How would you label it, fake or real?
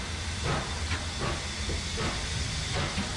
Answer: real